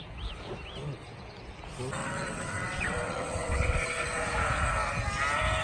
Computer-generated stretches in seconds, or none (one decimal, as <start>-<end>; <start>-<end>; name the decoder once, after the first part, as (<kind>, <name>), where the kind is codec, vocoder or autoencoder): 2.0-4.2 (vocoder, WaveNeXt)